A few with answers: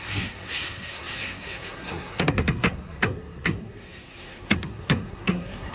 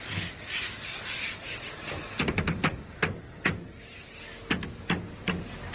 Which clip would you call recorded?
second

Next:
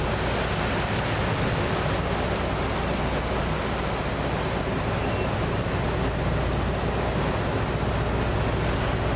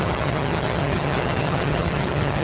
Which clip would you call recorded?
first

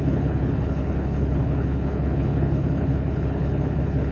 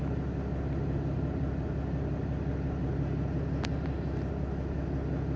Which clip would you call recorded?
second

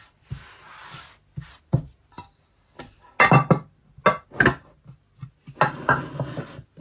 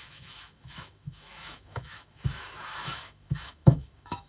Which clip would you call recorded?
first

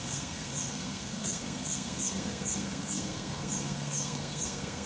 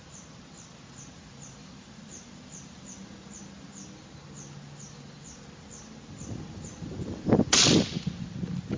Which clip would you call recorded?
second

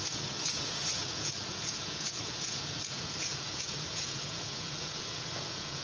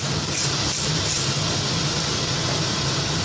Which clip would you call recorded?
second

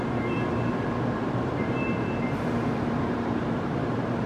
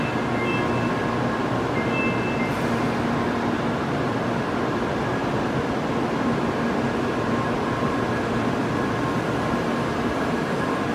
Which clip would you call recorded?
second